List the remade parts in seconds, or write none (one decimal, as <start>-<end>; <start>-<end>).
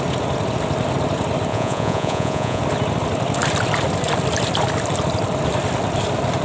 1.5-2.6